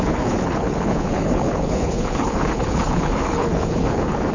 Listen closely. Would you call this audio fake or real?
fake